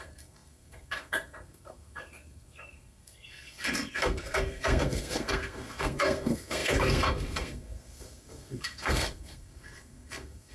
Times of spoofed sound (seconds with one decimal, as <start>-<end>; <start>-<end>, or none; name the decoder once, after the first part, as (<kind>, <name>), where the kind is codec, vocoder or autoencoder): 0.0-10.5 (codec, SNAC)